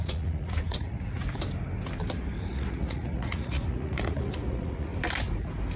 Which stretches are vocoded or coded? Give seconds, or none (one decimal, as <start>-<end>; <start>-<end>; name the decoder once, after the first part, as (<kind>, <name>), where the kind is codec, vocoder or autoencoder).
0.0-1.2 (vocoder, Vocos); 2.5-4.9